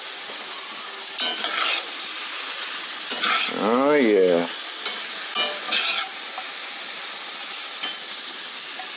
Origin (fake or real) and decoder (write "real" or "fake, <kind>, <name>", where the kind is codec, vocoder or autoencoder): real